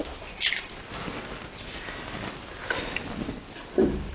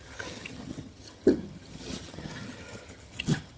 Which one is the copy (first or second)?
second